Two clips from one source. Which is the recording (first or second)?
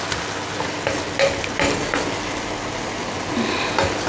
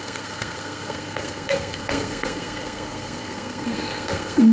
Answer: first